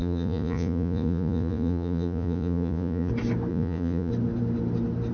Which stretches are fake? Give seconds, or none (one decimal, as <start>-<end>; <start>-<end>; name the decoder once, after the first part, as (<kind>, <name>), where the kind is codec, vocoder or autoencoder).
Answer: 0.0-3.1 (vocoder, Vocos); 3.5-4.1